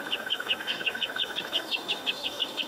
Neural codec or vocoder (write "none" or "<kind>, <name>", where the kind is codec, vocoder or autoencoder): codec, DAC